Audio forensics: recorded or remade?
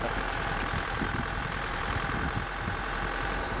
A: remade